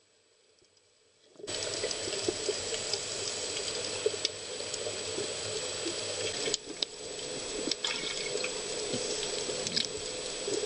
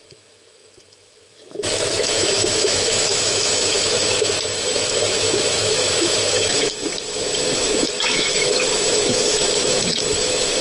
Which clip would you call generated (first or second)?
second